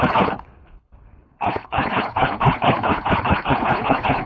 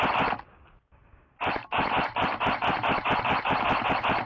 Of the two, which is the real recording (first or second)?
second